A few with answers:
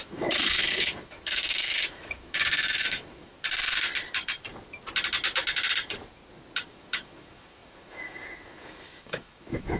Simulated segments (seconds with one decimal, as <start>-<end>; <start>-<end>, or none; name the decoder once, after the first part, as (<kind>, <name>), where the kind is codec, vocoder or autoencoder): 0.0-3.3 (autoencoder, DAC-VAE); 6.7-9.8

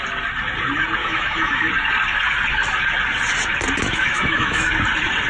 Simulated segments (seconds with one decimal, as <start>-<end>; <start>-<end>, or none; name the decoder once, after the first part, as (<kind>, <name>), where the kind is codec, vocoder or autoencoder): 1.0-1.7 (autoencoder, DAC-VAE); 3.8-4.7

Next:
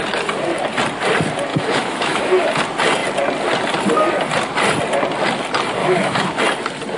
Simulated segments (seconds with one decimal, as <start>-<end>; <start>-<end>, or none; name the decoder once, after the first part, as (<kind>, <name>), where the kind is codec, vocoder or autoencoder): 1.5-2.5 (autoencoder, DAC-VAE); 5.8-6.4